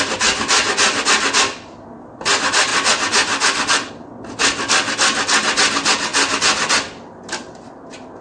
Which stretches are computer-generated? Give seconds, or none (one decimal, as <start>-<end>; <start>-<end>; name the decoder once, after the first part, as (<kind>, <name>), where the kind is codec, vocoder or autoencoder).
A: none